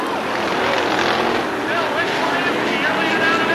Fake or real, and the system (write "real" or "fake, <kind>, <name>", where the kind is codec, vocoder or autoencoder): real